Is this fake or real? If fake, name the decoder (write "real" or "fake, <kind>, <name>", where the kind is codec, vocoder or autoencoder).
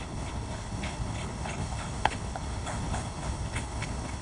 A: fake, codec, HILCodec